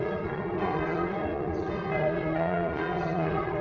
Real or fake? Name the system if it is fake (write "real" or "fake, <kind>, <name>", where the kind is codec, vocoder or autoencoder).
fake, vocoder, Vocos